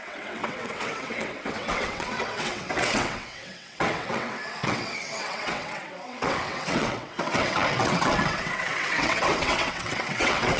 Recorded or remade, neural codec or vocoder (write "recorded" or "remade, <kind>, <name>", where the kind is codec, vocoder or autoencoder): remade, vocoder, WaveNeXt